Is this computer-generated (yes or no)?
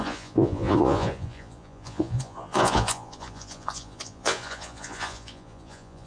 yes